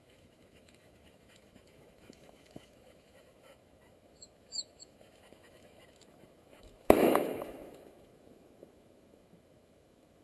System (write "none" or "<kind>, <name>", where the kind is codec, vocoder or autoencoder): autoencoder, DAC-VAE